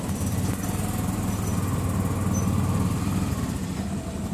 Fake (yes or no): no